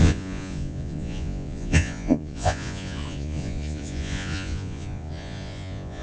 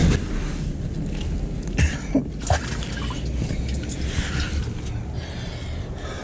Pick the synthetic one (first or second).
first